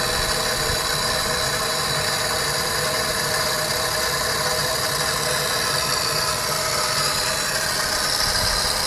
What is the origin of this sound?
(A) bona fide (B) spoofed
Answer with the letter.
A